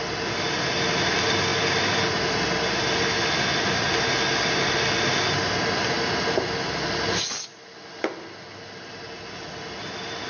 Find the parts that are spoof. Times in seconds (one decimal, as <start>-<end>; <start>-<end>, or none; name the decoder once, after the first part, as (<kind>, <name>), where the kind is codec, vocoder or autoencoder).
none